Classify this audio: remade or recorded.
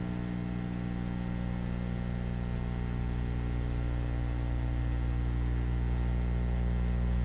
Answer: recorded